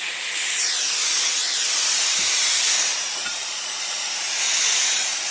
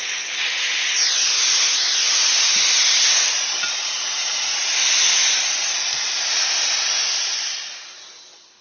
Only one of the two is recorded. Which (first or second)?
second